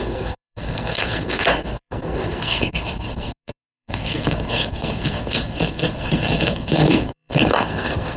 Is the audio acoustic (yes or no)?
no